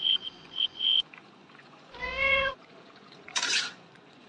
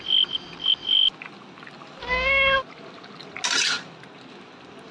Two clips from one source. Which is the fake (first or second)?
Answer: first